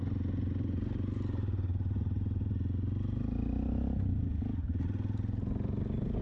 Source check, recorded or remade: recorded